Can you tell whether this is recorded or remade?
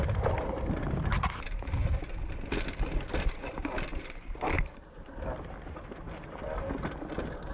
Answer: recorded